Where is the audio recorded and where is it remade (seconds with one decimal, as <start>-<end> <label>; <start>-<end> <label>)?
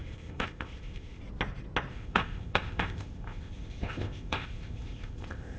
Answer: 0.0-1.2 remade; 1.2-1.9 recorded; 1.9-5.6 remade